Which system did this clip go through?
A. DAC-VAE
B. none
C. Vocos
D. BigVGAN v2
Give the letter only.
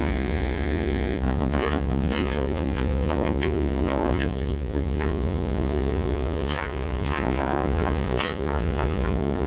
C